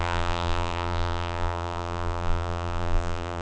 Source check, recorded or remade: remade